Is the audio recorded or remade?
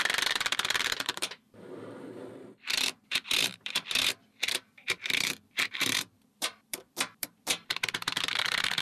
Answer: remade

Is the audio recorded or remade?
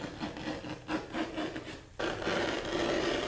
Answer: recorded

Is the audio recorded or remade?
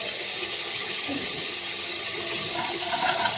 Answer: remade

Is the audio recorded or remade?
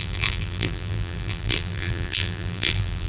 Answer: remade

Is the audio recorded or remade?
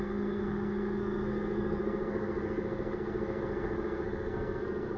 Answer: remade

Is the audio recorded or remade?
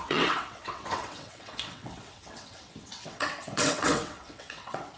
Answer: remade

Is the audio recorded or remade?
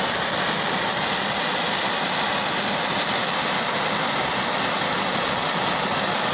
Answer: recorded